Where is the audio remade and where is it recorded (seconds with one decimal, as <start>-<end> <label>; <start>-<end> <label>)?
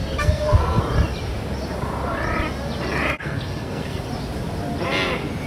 0.0-0.8 remade; 0.8-3.2 recorded; 3.2-4.1 remade; 4.1-5.5 recorded